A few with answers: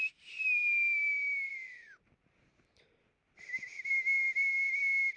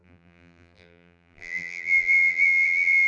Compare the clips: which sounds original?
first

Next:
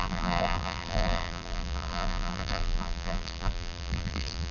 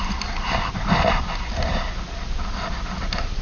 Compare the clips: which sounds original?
second